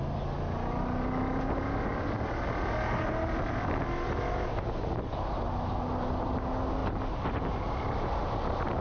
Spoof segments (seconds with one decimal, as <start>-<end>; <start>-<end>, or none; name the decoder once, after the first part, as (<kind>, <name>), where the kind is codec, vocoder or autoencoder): none